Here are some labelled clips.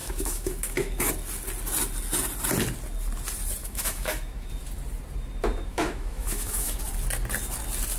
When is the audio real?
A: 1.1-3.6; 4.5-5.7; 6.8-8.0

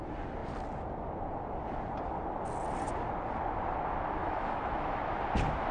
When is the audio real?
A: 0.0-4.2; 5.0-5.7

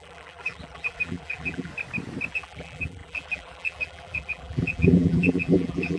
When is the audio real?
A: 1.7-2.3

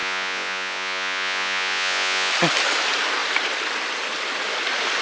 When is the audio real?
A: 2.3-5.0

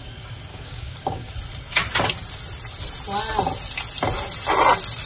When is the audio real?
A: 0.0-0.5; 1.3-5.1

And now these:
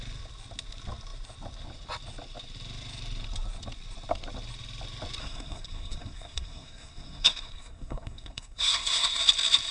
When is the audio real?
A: 0.0-5.2; 9.2-9.7